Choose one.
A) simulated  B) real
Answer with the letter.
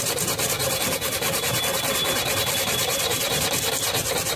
A